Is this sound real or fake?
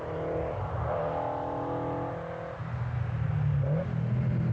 real